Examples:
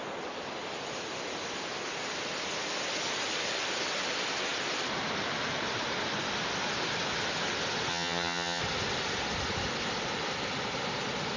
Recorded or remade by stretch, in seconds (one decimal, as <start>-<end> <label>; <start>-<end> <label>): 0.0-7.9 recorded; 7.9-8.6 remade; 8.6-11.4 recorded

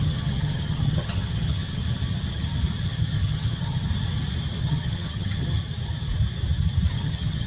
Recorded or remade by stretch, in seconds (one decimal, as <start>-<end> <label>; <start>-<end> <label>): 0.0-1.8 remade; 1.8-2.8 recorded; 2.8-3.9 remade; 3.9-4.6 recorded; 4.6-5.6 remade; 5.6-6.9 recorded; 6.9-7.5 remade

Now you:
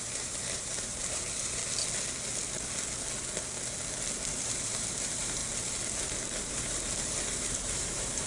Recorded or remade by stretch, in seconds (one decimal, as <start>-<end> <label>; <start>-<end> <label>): 0.0-1.6 remade; 1.6-4.3 recorded; 4.3-5.4 remade; 5.4-6.4 recorded; 6.4-8.3 remade

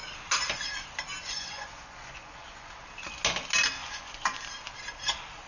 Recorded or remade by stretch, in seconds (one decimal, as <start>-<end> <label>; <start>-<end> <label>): 0.0-1.2 recorded; 1.2-2.7 remade; 2.7-3.8 recorded; 3.8-4.4 remade; 4.4-5.5 recorded

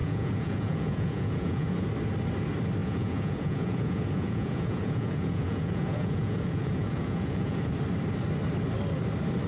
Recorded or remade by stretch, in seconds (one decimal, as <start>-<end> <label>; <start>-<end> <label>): 0.0-1.9 remade; 1.9-2.8 recorded; 2.8-7.7 remade; 7.7-9.5 recorded

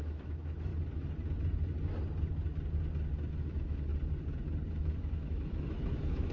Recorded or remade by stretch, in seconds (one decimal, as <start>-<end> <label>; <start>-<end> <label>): 0.0-0.7 remade; 0.7-3.4 recorded; 3.4-3.9 remade; 3.9-4.7 recorded; 4.7-6.3 remade